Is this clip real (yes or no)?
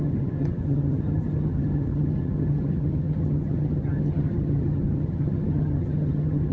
no